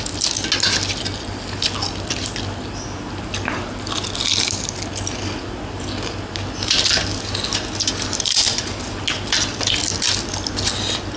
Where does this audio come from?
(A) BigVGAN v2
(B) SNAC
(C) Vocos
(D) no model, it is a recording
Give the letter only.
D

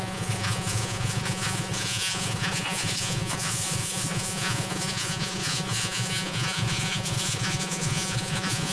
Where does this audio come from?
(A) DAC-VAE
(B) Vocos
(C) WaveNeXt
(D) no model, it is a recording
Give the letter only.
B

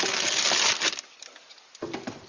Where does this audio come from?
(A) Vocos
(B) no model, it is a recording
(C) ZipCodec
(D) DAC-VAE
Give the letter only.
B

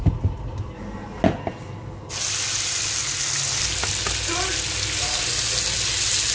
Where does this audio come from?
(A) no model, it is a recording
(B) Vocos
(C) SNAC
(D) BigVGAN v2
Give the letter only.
A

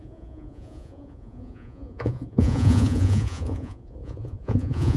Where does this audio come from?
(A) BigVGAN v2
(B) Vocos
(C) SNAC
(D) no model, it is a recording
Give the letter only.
B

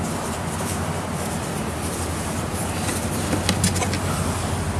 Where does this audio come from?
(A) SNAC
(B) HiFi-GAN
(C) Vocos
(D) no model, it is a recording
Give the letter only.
D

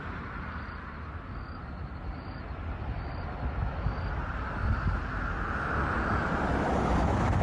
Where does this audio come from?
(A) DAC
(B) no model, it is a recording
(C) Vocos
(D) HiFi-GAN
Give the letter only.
B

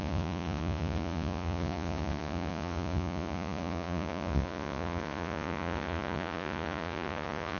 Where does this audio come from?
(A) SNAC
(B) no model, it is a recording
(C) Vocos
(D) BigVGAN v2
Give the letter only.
C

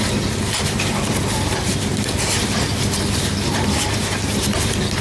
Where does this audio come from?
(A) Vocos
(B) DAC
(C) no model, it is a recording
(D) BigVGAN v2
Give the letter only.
C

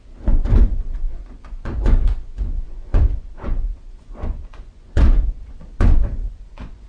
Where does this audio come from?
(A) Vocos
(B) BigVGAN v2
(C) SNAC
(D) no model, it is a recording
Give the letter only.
A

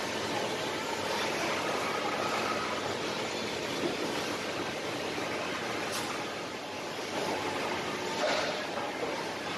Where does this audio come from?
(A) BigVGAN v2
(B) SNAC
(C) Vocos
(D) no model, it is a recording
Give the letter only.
D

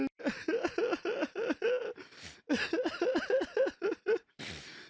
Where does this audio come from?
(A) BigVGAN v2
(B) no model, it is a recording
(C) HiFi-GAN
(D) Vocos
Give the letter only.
B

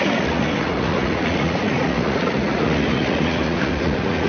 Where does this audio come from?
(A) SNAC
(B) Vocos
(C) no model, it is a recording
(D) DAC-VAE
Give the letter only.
B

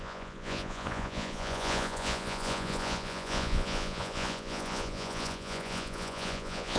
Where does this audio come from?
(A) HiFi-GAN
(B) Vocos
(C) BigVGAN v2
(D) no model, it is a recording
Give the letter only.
B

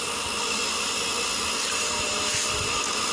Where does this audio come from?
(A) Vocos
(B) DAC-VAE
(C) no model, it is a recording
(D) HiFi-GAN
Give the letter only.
C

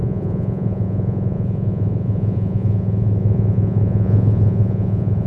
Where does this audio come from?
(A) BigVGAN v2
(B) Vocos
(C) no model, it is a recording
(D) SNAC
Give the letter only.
B